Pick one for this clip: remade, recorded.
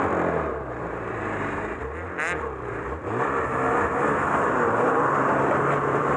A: remade